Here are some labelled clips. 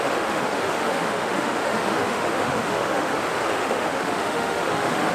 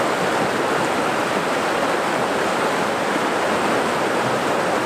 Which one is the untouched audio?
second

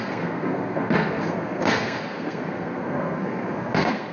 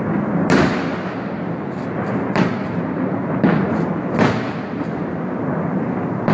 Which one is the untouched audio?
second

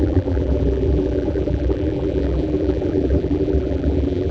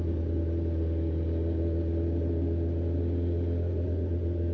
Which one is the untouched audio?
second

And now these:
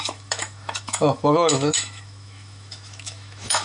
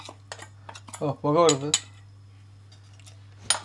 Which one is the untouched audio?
second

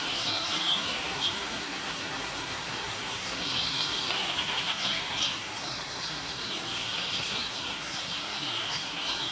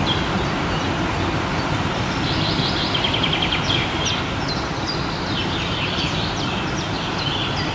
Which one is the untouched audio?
second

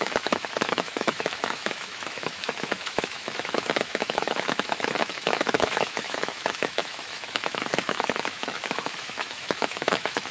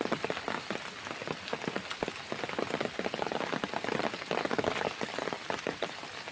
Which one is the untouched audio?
second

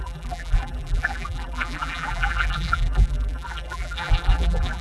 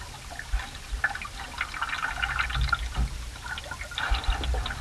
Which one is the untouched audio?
second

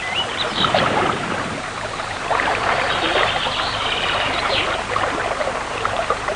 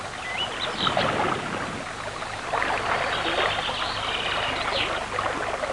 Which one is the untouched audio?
second